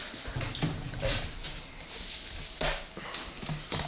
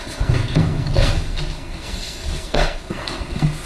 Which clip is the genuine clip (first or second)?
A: first